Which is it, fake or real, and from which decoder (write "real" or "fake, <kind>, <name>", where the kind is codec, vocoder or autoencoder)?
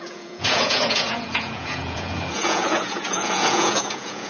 fake, vocoder, Vocos